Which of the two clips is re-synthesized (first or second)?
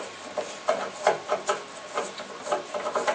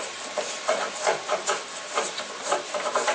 second